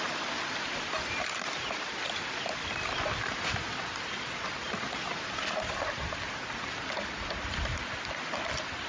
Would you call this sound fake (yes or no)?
no